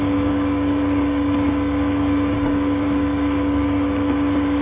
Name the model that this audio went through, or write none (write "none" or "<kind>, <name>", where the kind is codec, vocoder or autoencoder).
codec, DAC